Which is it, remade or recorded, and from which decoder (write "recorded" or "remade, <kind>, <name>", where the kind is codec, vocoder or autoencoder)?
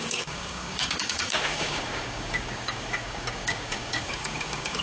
remade, codec, DAC